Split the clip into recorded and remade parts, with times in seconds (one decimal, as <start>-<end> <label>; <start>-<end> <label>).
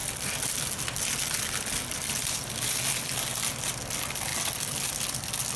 0.0-5.6 recorded